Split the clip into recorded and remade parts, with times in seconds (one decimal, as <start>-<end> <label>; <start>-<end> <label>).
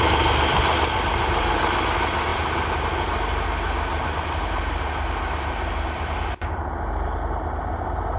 0.0-8.2 recorded